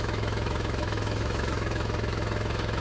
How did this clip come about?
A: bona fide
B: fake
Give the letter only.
B